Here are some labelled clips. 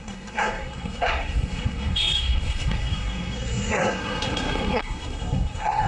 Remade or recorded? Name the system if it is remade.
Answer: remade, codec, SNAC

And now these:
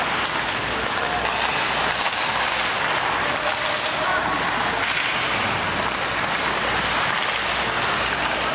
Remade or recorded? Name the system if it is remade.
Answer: recorded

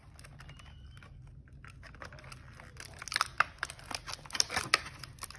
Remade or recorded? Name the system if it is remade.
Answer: recorded